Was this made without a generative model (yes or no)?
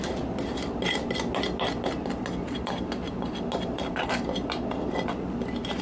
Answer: yes